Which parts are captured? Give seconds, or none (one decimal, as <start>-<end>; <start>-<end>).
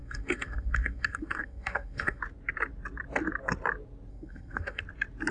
2.2-4.1; 4.8-5.3